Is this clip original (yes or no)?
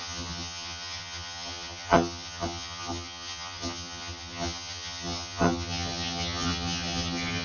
no